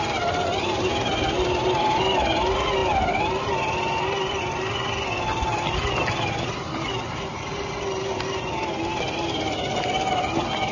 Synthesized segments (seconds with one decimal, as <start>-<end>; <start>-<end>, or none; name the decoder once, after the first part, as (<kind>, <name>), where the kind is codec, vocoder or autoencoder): none